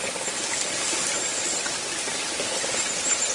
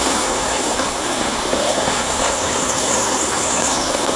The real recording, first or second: first